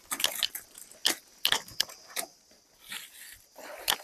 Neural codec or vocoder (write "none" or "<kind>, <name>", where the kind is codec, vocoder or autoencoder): none